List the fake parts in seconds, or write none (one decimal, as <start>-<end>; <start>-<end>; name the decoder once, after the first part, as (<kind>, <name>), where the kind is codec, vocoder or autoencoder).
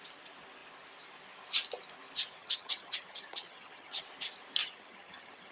2.4-4.0 (vocoder, HiFi-GAN); 4.6-5.5